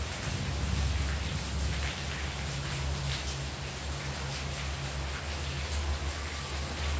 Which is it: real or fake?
real